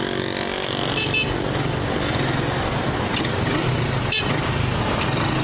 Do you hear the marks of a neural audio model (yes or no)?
no